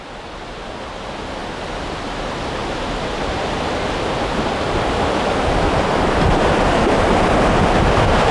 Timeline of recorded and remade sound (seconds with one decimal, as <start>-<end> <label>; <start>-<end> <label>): 0.0-8.3 recorded